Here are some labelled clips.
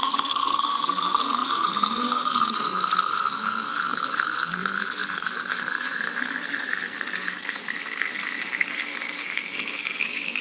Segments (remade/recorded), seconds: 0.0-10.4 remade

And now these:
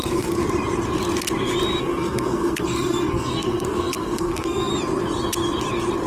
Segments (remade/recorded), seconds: 0.0-0.4 remade; 0.4-1.8 recorded; 1.8-4.7 remade; 4.7-6.1 recorded

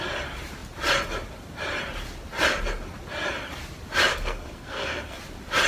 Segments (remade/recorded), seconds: 0.0-4.1 recorded; 4.1-5.2 remade; 5.2-5.7 recorded

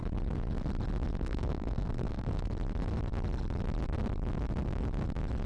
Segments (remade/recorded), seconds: 0.0-1.2 recorded; 1.2-2.5 remade; 2.5-5.5 recorded